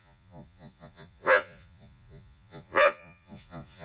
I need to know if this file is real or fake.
fake